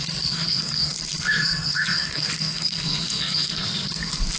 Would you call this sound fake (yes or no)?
yes